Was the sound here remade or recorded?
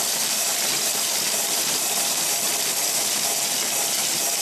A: remade